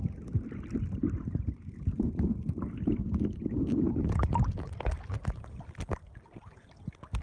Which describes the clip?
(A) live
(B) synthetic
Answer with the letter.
A